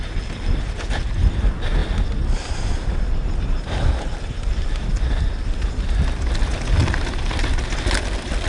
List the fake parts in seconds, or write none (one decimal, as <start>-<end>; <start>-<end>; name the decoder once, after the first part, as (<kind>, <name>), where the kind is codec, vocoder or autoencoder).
6.8-8.5 (vocoder, BigVGAN v2)